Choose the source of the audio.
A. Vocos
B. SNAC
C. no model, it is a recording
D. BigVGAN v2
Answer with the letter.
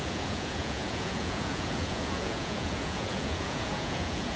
A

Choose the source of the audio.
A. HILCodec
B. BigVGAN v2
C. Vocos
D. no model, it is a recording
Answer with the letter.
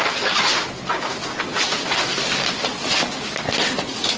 D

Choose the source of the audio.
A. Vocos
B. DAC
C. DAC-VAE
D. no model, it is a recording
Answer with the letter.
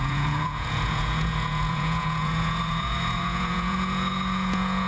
A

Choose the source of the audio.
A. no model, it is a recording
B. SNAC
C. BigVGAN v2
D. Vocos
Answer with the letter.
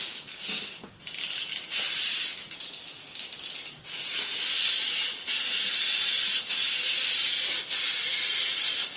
A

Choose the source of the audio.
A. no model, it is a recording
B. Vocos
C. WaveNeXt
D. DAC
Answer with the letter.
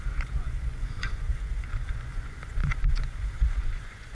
B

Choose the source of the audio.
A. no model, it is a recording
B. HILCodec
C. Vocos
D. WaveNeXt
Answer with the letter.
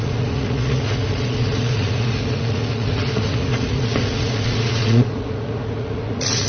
C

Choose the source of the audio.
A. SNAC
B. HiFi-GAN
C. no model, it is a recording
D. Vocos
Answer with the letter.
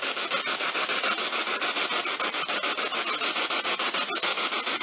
C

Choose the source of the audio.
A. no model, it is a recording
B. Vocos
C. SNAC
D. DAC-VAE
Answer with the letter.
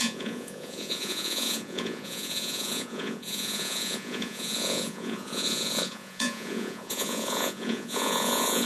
B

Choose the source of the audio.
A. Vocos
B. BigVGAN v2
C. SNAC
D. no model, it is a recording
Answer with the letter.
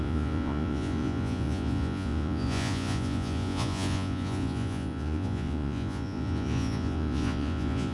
A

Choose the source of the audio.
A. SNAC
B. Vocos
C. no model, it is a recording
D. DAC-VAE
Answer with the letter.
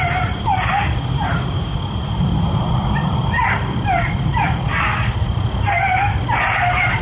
C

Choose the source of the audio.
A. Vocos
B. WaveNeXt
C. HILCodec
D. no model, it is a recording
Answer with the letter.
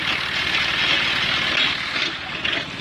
D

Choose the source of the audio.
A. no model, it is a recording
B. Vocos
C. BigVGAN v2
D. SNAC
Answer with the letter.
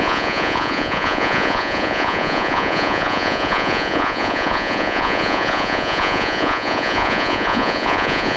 B